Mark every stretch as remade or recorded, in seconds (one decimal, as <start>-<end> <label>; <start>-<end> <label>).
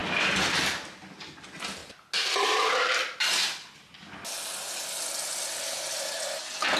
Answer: 0.0-6.8 recorded